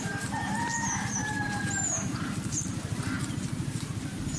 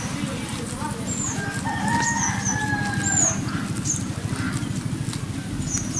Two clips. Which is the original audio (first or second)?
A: second